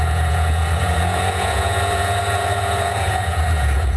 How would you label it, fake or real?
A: fake